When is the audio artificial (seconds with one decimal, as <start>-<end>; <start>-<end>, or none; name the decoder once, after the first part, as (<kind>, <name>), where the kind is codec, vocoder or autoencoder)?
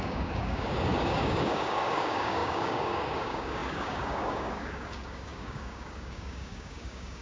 0.0-7.2 (codec, DAC)